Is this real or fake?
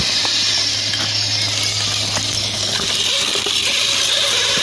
real